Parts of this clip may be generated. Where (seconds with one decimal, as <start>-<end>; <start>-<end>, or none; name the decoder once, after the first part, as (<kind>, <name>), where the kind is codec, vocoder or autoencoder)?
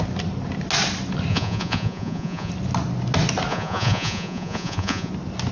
1.3-2.5 (vocoder, Vocos); 3.5-5.1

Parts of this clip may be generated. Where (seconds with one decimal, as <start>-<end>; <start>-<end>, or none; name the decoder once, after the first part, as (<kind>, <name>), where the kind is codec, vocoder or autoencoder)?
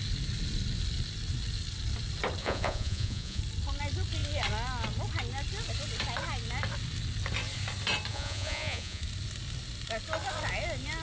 2.4-3.4 (vocoder, Vocos); 8.1-9.0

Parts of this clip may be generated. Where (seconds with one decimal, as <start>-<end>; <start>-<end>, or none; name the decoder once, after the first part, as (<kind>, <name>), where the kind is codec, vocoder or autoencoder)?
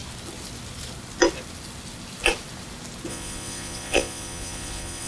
3.1-5.1 (vocoder, Vocos)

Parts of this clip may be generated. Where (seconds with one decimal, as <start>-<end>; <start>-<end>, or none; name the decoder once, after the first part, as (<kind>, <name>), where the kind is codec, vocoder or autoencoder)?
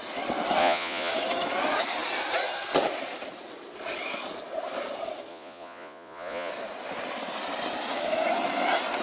0.6-1.1 (vocoder, Vocos); 5.3-6.5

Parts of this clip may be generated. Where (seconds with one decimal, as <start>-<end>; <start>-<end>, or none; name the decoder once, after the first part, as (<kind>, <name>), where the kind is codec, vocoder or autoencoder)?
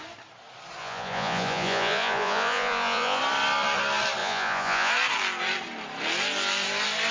0.8-3.2 (vocoder, Vocos); 4.2-4.9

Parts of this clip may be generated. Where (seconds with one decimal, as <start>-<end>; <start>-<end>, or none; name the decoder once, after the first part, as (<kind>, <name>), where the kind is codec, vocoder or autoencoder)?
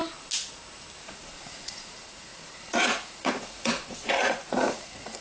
1.0-5.2 (vocoder, Vocos)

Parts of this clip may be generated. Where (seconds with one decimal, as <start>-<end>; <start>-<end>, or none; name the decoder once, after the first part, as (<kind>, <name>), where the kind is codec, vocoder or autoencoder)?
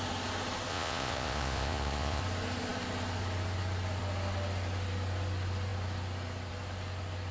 0.7-2.2 (vocoder, Vocos)